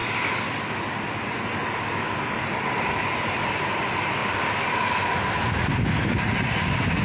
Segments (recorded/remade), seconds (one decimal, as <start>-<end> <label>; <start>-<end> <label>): 0.0-7.0 recorded